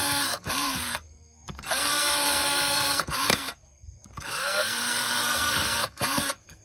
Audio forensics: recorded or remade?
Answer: remade